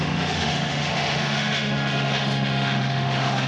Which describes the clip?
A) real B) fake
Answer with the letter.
B